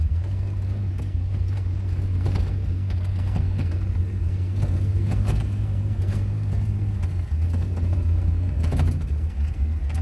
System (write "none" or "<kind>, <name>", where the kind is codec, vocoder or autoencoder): codec, SNAC